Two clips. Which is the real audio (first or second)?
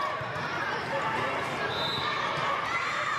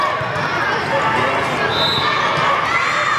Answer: second